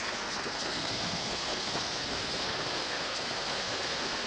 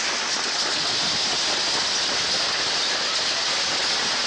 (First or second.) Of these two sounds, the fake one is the first